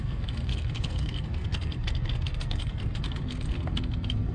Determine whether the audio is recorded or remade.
remade